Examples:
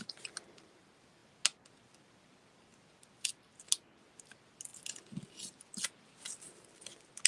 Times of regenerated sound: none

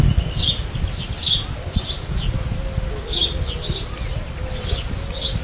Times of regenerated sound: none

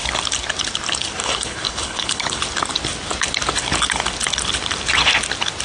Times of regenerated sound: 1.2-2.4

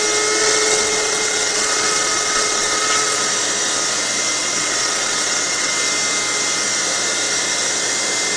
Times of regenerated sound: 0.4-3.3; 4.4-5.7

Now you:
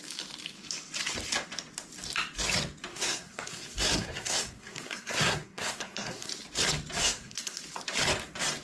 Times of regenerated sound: 2.9-6.3; 7.0-7.6

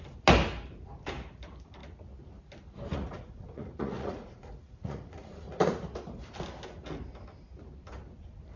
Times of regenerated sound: 2.9-5.7

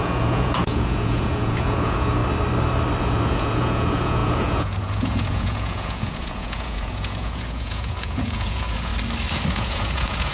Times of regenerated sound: 0.0-2.2; 3.0-8.9; 9.5-10.3